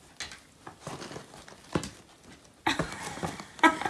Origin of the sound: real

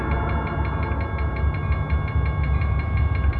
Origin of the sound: real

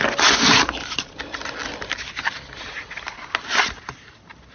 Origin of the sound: real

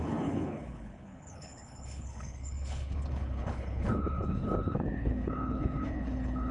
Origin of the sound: fake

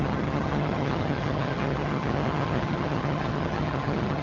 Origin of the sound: fake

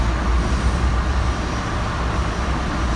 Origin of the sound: real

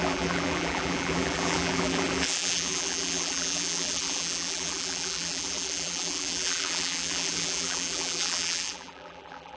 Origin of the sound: fake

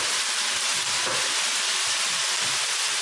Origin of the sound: real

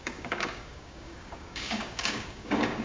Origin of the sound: fake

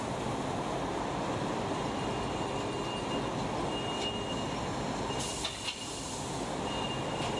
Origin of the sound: real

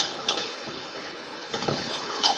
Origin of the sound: fake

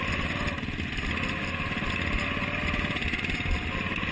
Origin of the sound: real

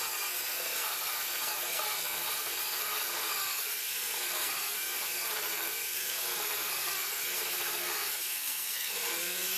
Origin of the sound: fake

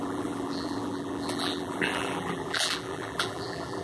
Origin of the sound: fake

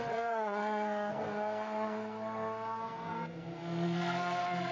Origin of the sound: fake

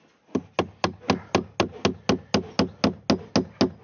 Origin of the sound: real